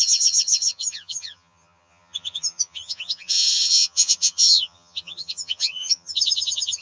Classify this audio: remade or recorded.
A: remade